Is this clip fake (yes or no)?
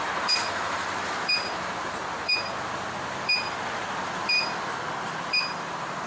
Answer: yes